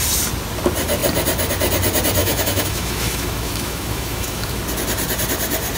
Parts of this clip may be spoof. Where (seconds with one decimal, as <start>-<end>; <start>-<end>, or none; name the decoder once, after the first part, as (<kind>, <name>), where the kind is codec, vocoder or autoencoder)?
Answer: 2.2-4.6 (autoencoder, DAC-VAE)